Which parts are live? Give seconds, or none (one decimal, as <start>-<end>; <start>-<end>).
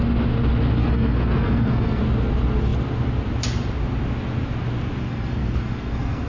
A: 0.0-0.8; 2.0-5.0